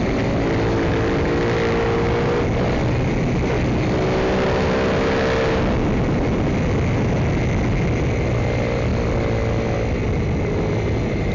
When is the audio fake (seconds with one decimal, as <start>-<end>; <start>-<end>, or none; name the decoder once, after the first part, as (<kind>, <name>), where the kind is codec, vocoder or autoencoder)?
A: none